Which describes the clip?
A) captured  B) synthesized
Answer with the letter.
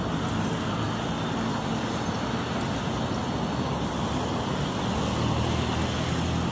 A